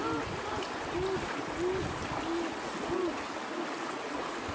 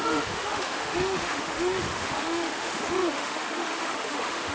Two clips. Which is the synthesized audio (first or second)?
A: second